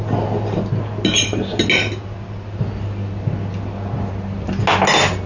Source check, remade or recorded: recorded